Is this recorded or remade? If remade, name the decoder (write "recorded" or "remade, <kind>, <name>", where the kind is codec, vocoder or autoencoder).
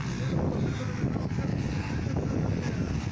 recorded